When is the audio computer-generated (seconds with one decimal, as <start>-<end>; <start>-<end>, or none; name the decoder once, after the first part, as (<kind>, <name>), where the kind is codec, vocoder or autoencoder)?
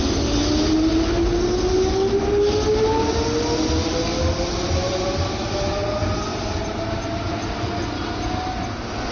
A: 6.3-6.9 (vocoder, BigVGAN v2)